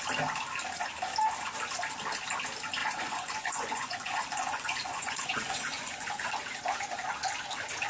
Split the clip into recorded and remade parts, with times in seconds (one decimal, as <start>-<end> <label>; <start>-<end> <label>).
0.0-2.8 recorded; 2.8-6.3 remade; 6.3-7.9 recorded